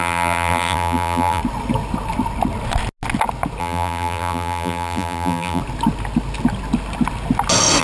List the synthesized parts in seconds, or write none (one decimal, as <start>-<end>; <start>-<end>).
0.0-1.4; 3.6-5.6